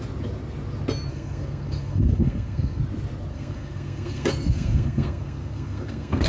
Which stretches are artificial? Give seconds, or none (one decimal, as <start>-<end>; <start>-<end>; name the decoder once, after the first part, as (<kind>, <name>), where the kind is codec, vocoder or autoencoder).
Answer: 1.1-2.8 (codec, SNAC); 3.3-6.3